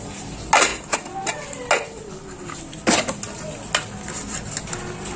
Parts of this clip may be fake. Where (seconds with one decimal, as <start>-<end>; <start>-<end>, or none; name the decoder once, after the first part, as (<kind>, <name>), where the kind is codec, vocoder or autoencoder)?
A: none